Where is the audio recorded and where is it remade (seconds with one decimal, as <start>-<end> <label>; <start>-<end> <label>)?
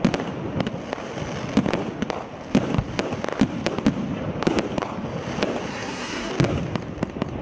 0.0-5.7 recorded; 5.7-6.3 remade; 6.3-7.4 recorded